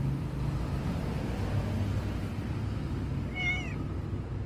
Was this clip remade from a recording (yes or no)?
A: no